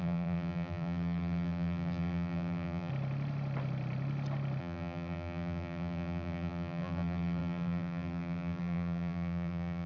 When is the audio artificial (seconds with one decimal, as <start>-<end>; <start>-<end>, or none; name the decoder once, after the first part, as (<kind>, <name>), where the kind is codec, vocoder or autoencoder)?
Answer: 0.0-2.9 (vocoder, BigVGAN v2); 4.6-9.9

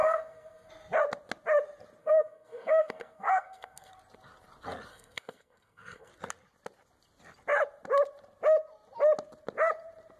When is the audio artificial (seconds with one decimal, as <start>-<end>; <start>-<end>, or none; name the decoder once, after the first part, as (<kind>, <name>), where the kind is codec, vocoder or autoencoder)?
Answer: 0.0-0.7 (codec, SNAC); 2.0-3.9; 4.9-6.1

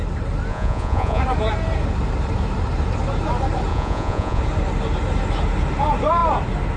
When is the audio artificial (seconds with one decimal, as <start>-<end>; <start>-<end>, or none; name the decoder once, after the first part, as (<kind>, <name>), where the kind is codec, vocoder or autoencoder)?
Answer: 0.5-1.2 (vocoder, Vocos); 3.7-4.4

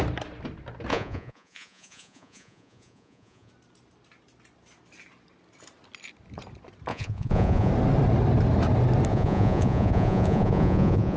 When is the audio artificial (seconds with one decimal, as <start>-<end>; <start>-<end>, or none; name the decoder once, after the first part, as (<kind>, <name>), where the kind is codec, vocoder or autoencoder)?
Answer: 0.9-3.5 (vocoder, Vocos); 6.9-7.7; 9.1-11.2

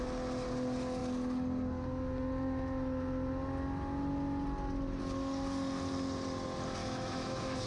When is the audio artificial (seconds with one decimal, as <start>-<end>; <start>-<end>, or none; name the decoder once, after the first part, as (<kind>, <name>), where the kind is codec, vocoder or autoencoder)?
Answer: 6.8-7.7 (autoencoder, DAC-VAE)

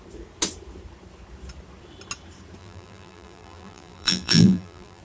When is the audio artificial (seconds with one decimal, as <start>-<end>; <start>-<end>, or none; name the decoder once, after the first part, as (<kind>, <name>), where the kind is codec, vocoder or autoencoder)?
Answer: 2.6-5.0 (vocoder, BigVGAN v2)

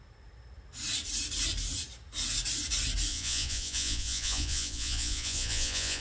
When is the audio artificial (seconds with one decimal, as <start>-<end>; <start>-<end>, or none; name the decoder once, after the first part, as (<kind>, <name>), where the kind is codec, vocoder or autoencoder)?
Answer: 3.1-6.0 (vocoder, Vocos)

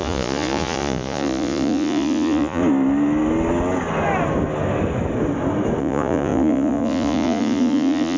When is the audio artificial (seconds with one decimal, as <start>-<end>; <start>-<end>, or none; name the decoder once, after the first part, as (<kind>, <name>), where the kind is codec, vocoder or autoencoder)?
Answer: 0.0-2.6 (vocoder, Vocos); 5.8-8.2